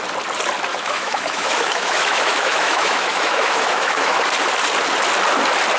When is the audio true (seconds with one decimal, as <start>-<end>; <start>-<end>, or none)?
0.0-0.7; 4.2-5.8